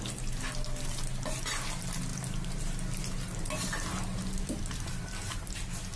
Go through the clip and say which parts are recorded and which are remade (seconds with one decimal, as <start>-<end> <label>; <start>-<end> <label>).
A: 0.0-6.0 recorded